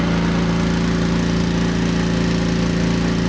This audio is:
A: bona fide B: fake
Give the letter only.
A